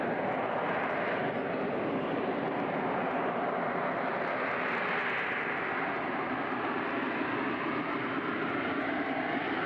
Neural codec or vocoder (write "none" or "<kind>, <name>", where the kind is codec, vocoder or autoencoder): none